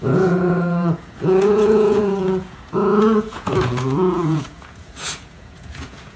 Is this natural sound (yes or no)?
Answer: no